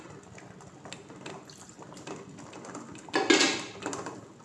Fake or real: real